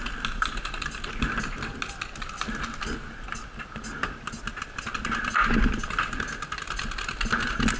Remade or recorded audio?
recorded